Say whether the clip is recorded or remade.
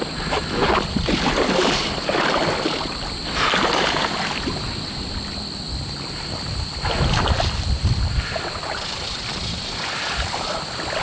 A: recorded